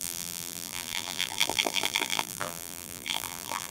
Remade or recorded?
remade